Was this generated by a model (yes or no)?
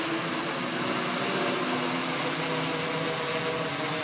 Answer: no